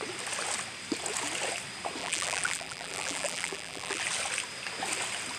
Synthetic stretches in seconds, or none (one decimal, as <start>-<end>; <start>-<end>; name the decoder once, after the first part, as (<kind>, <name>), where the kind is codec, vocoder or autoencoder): 2.0-4.0 (vocoder, BigVGAN v2)